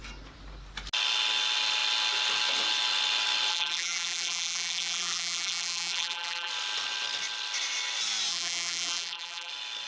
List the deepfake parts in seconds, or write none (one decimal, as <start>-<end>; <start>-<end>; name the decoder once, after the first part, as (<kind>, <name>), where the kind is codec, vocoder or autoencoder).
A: 3.5-6.5 (vocoder, BigVGAN v2); 8.3-9.5